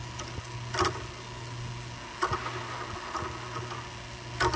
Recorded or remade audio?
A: recorded